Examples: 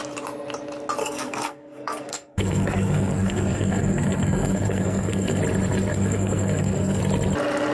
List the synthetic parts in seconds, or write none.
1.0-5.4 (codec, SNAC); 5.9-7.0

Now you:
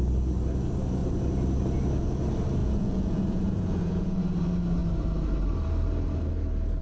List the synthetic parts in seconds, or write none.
2.6-4.2 (vocoder, Vocos)

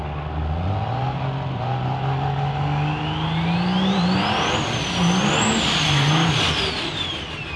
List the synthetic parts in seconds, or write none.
none

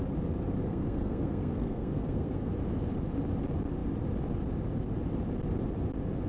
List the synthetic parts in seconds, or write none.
0.7-2.5 (codec, SNAC)

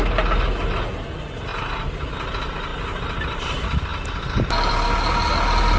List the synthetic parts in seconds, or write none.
1.5-2.1 (vocoder, BigVGAN v2)

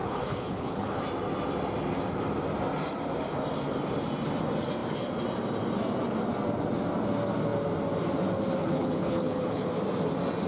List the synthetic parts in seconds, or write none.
0.0-1.0 (codec, HILCodec); 8.6-9.7

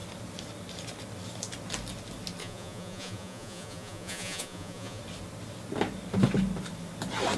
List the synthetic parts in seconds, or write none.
2.4-5.0 (vocoder, Vocos)

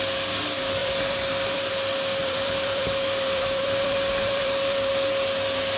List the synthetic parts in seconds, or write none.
0.8-1.7 (vocoder, BigVGAN v2); 2.2-4.9